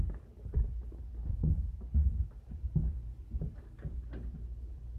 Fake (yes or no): no